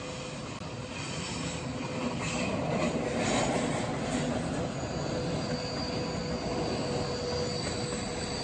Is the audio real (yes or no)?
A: yes